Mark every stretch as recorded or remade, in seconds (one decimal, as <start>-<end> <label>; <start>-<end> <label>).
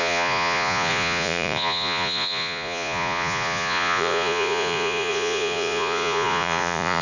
0.0-7.0 remade